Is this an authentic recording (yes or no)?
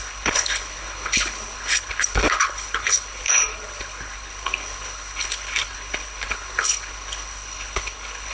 no